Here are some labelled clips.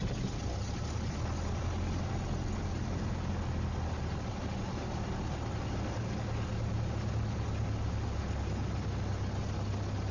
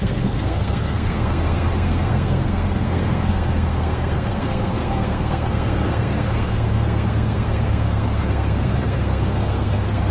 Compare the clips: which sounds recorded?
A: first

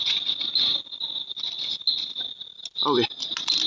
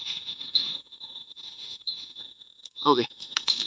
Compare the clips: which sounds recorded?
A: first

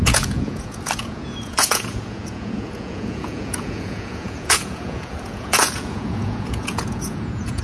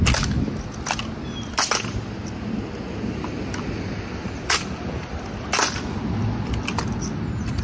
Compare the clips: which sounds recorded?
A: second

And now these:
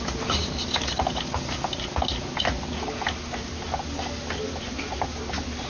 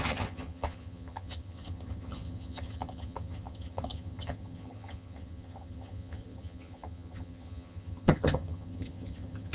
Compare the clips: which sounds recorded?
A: first